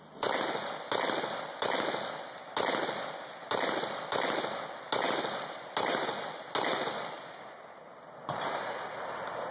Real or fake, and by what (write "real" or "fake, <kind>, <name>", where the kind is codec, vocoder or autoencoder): real